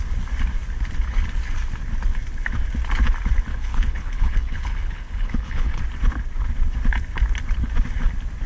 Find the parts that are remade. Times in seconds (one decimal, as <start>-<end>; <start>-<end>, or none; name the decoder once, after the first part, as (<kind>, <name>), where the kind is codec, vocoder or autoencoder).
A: 3.5-5.8 (codec, HILCodec)